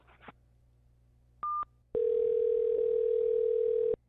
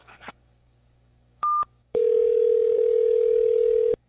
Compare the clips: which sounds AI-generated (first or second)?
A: second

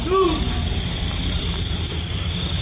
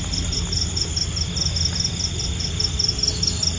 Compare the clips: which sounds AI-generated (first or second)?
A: first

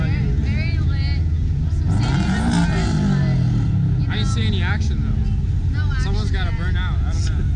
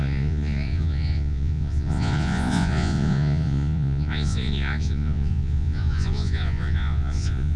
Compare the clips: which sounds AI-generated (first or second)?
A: second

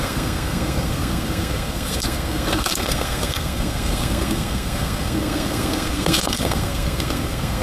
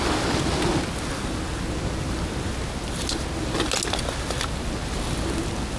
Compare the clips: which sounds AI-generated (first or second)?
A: first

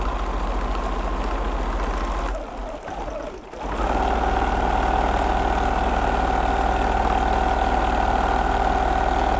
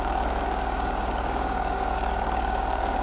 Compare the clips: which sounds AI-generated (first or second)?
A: second